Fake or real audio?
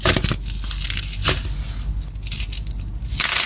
real